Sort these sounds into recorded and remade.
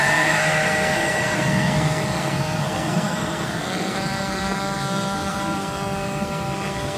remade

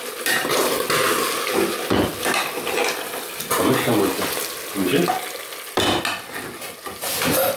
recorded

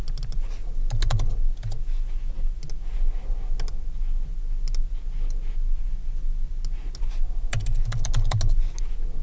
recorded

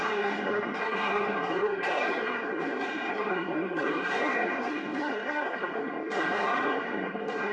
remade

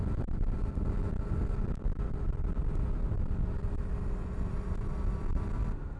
recorded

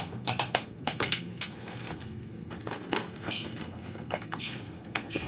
remade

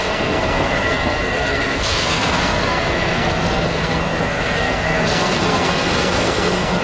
remade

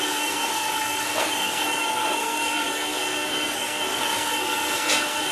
remade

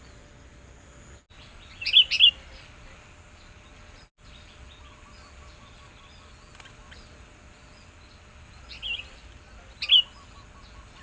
recorded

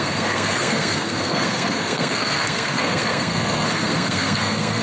remade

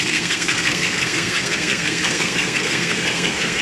remade